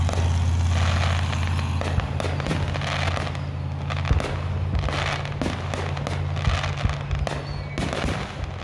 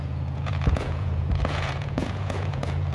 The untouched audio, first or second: first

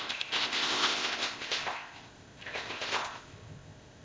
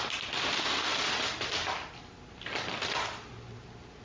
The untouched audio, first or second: second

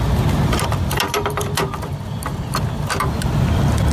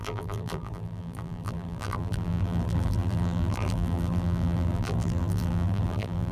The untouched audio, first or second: first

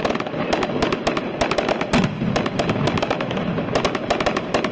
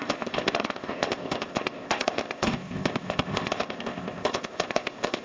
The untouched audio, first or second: first